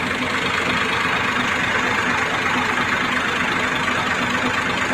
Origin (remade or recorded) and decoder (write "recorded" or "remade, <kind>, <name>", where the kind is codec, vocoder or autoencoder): recorded